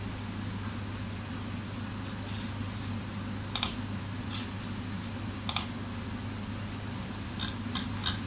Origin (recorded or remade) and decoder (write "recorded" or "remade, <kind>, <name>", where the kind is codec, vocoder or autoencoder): recorded